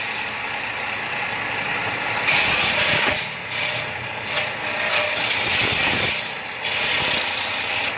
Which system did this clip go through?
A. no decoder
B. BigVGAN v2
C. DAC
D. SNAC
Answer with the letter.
A